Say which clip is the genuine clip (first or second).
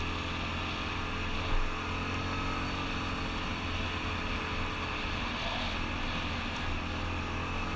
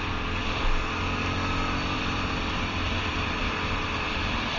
first